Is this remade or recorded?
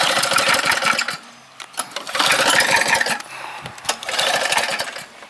recorded